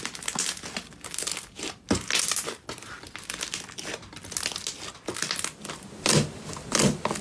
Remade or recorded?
recorded